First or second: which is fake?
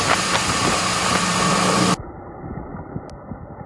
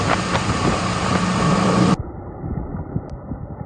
second